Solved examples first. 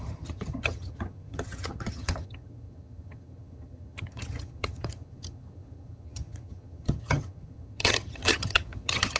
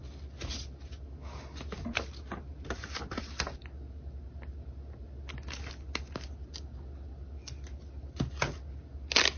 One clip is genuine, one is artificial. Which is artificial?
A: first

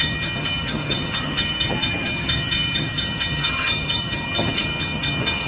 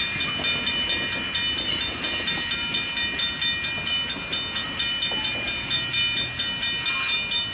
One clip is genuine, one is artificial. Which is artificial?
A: first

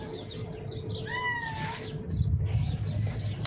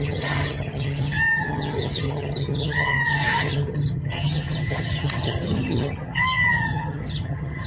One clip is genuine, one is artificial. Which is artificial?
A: second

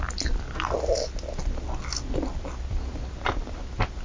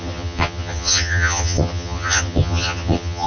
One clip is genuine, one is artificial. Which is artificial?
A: second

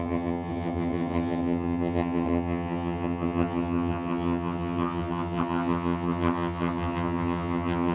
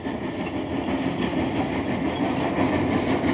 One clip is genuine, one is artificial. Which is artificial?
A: first